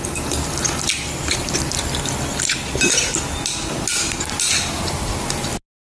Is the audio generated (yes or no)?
no